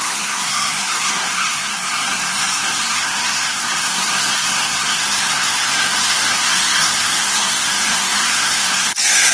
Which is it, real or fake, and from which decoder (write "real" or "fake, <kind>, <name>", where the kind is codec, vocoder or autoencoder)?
fake, codec, SNAC